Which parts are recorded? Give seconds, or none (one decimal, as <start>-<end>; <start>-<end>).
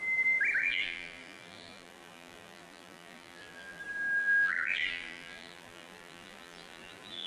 0.0-0.6; 3.8-4.2